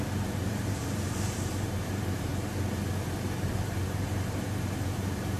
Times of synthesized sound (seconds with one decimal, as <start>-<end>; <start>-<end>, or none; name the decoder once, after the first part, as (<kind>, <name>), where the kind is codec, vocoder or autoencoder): 0.0-2.3 (vocoder, BigVGAN v2); 3.5-5.4